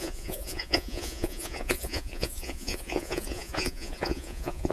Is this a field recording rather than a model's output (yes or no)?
no